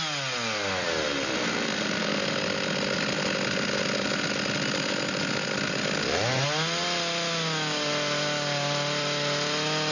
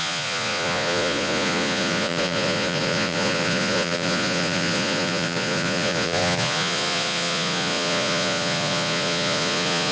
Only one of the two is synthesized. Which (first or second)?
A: second